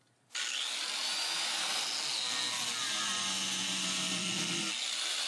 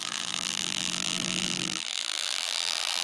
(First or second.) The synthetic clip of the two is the second